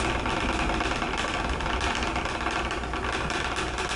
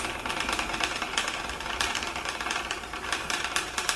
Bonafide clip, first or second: first